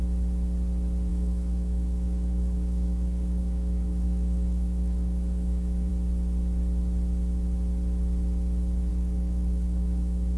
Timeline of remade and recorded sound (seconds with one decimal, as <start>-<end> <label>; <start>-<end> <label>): 0.0-1.1 recorded; 1.1-5.9 remade; 5.9-8.9 recorded; 8.9-10.4 remade